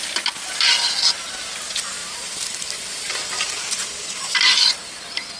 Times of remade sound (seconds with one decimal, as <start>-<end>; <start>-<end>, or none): 2.0-5.4